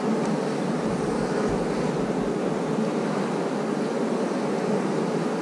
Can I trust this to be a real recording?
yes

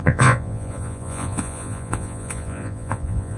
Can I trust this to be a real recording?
no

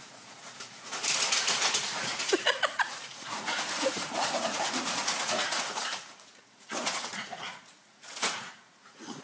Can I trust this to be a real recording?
no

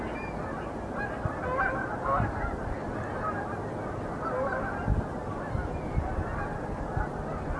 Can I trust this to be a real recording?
yes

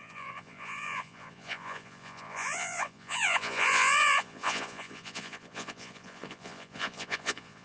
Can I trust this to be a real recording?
no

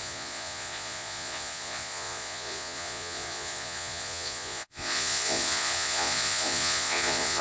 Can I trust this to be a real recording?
no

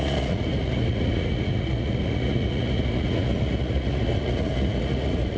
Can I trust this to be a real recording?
no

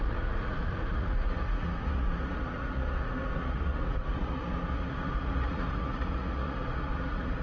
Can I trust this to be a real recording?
no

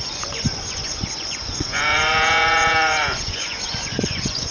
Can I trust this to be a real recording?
no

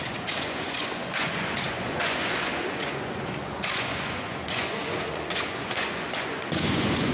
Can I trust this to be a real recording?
no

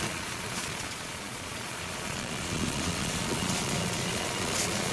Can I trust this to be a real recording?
no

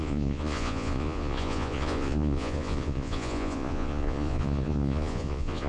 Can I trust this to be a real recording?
no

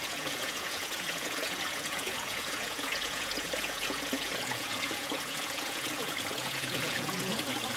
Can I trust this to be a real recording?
no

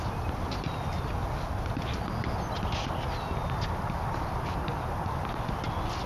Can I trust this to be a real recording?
yes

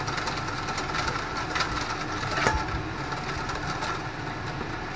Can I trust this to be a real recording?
yes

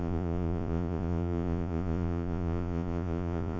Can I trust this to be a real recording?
no